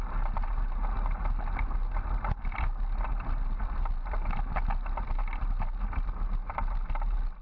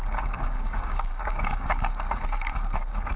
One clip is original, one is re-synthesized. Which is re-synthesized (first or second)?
second